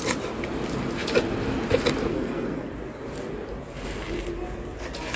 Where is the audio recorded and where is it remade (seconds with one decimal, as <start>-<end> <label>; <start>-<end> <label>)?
0.0-2.1 recorded; 2.1-2.7 remade; 2.7-5.2 recorded